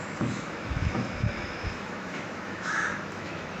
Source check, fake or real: fake